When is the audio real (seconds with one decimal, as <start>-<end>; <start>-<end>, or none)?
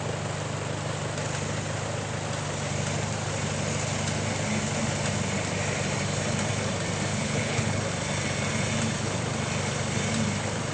0.0-7.1; 7.8-10.7